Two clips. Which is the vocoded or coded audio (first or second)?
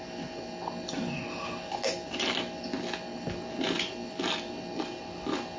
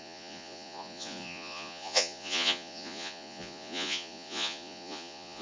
second